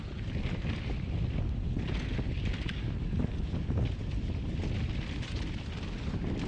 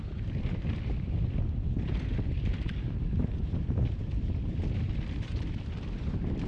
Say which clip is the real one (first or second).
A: first